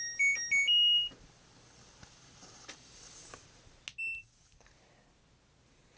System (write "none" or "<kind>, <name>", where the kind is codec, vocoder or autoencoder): none